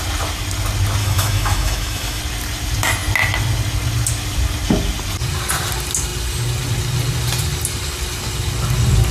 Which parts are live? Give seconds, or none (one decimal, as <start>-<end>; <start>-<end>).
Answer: 0.0-1.0; 2.2-9.1

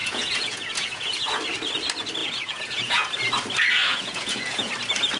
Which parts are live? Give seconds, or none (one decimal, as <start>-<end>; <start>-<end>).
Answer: 1.4-2.2; 3.1-3.9; 4.7-5.2

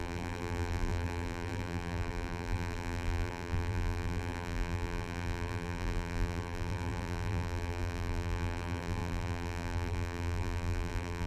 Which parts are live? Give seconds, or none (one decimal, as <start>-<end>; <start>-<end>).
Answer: none

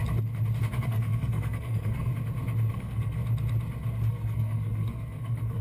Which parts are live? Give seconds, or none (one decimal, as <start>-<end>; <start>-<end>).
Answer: 0.0-0.8; 2.1-2.7; 3.2-4.1

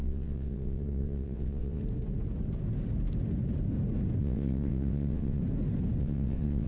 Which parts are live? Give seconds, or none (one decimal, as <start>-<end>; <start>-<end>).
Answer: 1.8-4.2; 5.4-6.0

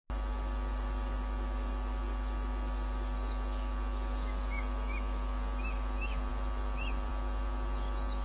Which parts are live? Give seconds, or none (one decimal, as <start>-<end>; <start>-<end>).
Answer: 0.0-8.2